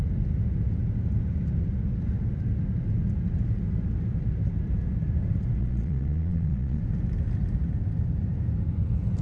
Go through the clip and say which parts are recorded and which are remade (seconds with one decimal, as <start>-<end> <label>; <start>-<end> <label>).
0.0-5.6 recorded; 5.6-6.8 remade; 6.8-9.2 recorded